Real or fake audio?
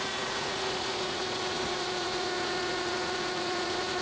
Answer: fake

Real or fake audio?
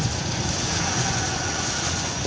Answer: fake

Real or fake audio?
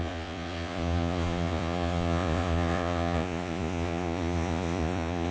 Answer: fake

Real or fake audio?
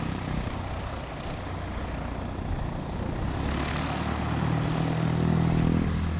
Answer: real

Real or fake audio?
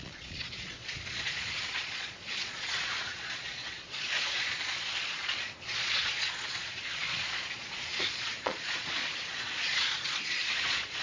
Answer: fake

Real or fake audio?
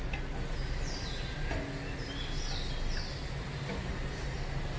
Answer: real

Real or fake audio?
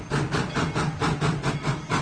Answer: real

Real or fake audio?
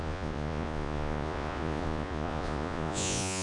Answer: fake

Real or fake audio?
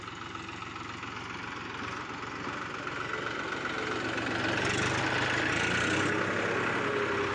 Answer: real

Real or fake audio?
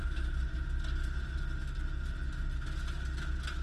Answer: real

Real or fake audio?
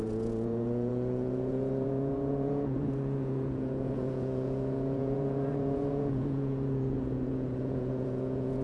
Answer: fake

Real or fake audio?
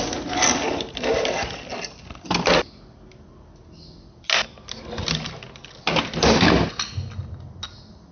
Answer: real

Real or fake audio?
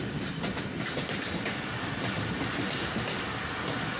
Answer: real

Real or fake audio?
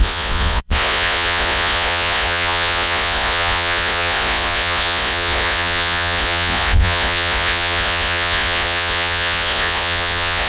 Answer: fake